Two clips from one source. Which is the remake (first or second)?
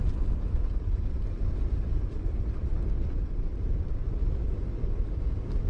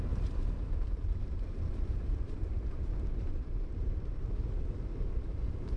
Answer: second